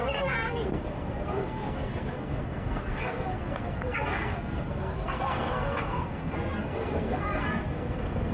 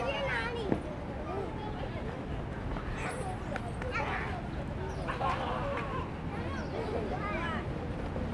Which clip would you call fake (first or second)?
first